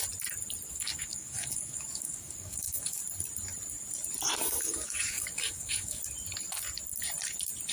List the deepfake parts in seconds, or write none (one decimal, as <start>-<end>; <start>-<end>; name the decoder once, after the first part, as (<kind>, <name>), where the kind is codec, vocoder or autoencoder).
0.7-3.0 (codec, DAC); 4.4-6.0